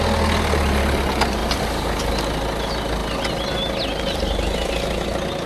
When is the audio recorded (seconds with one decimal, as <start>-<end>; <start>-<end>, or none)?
0.0-1.4; 2.1-5.5